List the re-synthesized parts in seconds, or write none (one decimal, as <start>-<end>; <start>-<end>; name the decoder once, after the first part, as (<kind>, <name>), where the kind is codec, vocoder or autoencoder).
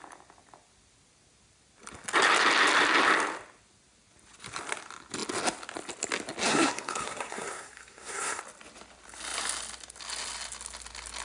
6.5-8.4 (codec, SNAC)